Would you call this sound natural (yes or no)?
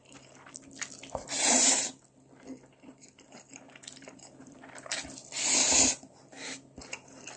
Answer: no